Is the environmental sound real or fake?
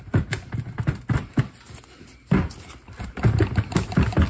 real